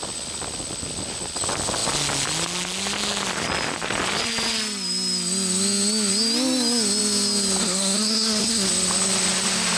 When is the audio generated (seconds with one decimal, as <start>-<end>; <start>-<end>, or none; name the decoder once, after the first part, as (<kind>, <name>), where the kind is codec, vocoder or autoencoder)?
7.6-8.7 (codec, SNAC)